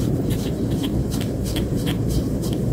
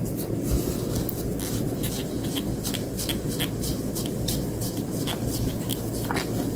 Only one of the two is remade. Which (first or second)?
first